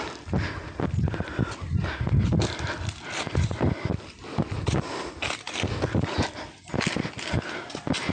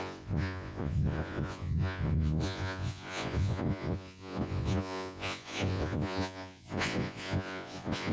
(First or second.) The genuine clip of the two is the first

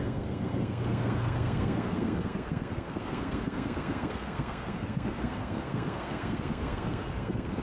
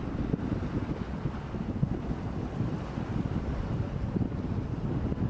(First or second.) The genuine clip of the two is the second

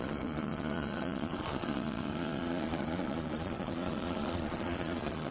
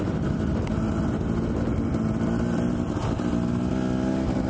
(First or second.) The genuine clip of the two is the second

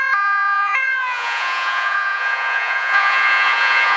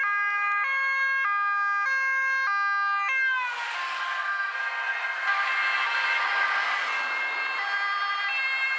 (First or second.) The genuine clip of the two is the second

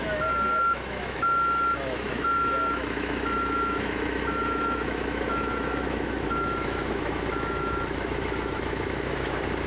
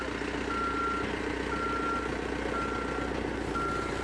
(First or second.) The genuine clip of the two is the second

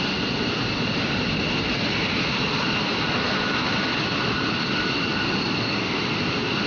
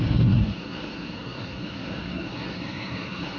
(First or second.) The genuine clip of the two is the first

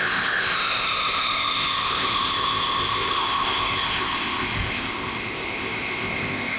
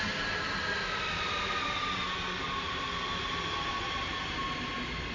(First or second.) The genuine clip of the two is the second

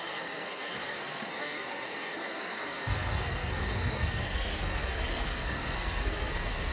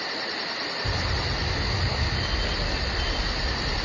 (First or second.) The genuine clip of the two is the second